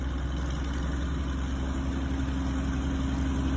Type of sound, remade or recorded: recorded